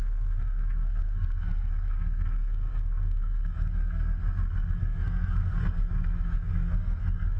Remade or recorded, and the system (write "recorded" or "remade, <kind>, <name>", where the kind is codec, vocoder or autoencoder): remade, codec, SNAC